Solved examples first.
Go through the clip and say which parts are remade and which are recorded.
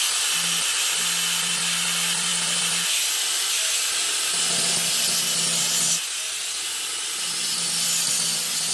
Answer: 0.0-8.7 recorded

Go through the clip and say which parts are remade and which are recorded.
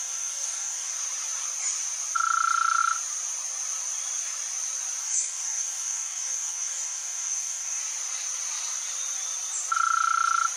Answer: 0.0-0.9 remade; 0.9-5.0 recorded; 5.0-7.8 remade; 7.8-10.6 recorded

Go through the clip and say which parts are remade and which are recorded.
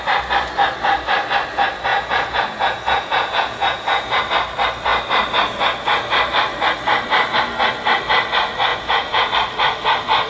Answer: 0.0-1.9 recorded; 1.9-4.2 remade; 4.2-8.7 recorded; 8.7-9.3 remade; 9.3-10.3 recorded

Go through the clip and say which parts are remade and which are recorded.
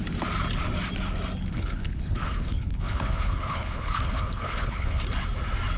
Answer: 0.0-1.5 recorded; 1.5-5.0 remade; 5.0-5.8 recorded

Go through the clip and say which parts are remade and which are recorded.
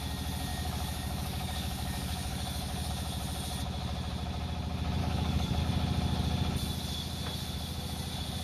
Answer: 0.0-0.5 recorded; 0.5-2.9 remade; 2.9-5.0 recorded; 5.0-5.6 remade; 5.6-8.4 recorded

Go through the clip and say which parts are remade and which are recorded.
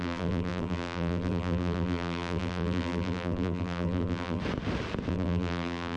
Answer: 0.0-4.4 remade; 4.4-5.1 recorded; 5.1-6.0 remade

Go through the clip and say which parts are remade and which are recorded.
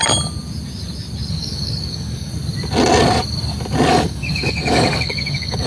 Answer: 0.0-1.3 recorded; 1.3-2.3 remade; 2.3-3.9 recorded; 3.9-5.7 remade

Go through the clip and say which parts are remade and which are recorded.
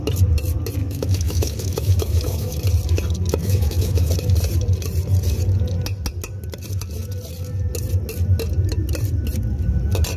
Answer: 0.0-0.8 recorded; 0.8-2.6 remade; 2.6-3.4 recorded; 3.4-4.1 remade; 4.1-10.2 recorded